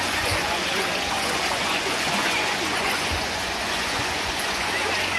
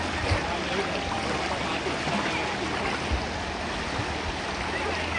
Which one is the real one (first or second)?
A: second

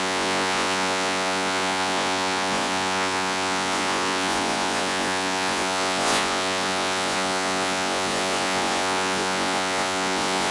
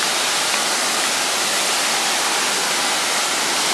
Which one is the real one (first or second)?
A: second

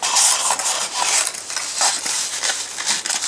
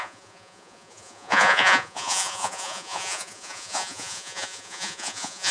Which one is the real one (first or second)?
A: first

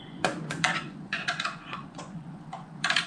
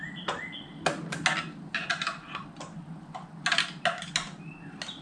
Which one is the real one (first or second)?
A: second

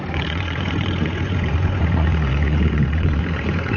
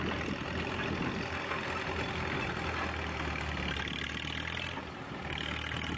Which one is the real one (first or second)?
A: second